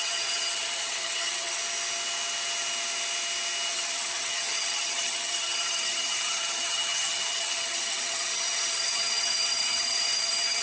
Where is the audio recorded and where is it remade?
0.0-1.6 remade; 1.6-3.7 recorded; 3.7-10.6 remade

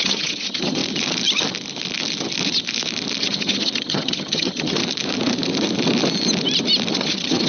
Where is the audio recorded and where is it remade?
0.0-0.8 remade; 0.8-3.2 recorded; 3.2-4.8 remade; 4.8-6.9 recorded; 6.9-7.5 remade

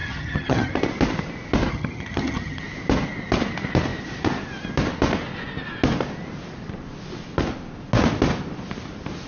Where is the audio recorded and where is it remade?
0.0-0.7 remade; 0.7-1.7 recorded; 1.7-2.6 remade; 2.6-9.3 recorded

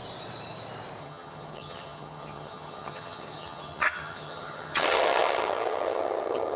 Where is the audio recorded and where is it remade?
0.0-1.0 recorded; 1.0-6.6 remade

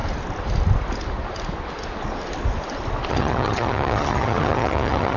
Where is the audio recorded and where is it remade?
0.0-3.1 recorded; 3.1-5.2 remade